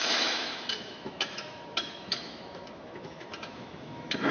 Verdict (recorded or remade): remade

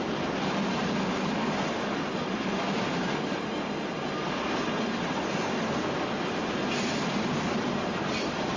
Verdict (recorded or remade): recorded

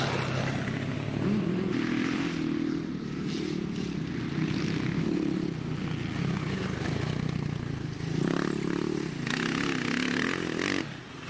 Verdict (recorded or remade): recorded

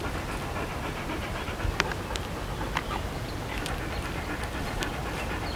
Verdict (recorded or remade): recorded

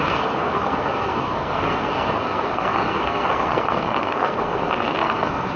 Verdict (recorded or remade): remade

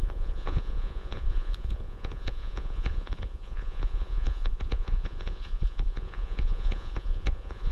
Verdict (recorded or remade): remade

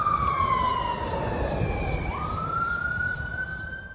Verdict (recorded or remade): recorded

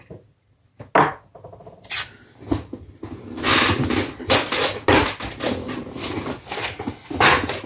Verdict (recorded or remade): recorded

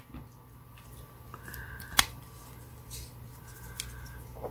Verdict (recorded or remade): recorded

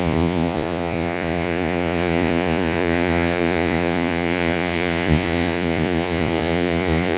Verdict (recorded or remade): remade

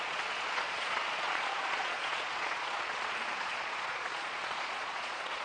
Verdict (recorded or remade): remade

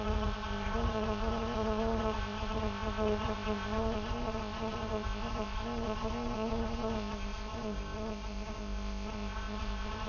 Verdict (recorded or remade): remade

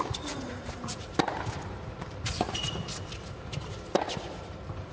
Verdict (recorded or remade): recorded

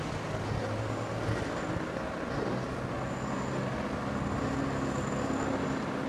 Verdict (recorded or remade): recorded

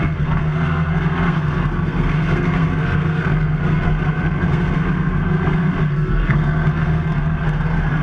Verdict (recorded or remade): remade